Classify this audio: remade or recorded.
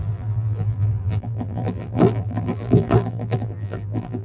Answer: remade